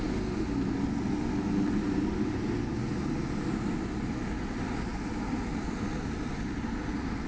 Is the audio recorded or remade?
recorded